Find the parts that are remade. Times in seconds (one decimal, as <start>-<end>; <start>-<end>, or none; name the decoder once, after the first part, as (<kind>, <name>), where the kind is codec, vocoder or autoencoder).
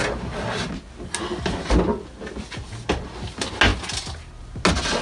none